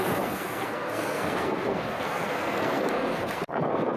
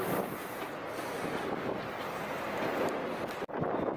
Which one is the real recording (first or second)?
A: second